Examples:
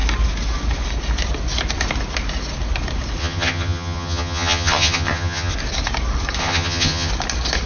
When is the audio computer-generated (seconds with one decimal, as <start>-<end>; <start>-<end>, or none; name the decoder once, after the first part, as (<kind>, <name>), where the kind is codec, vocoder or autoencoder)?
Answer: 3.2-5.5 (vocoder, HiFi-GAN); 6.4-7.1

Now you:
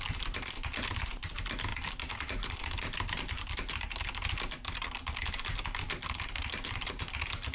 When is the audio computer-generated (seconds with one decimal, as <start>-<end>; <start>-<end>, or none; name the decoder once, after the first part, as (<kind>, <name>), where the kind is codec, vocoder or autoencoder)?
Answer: 1.7-2.5 (vocoder, BigVGAN v2)

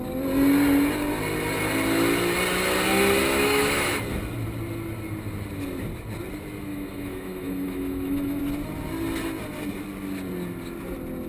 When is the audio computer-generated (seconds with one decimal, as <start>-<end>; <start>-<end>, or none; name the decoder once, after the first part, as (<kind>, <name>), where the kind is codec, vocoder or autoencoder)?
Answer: 3.2-3.9 (autoencoder, DAC-VAE); 6.7-8.4

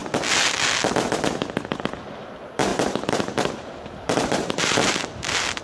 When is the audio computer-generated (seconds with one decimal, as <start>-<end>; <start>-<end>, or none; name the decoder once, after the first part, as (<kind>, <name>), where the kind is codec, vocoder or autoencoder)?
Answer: 2.2-2.7 (vocoder, BigVGAN v2); 3.5-5.6